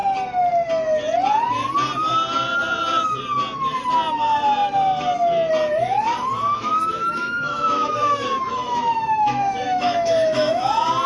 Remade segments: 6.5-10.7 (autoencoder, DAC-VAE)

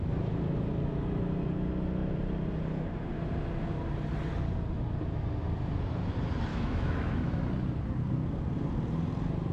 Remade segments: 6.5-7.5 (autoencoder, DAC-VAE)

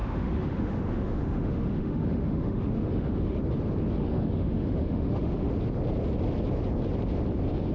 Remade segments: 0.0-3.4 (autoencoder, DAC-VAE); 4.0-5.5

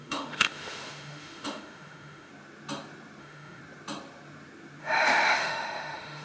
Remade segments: 0.0-2.3 (autoencoder, DAC-VAE); 3.2-3.6; 4.8-6.2